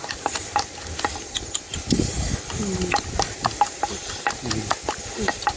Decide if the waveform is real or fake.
real